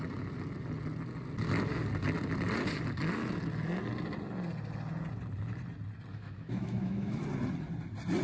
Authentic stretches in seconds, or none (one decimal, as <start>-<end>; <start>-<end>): 0.0-6.1; 7.2-8.2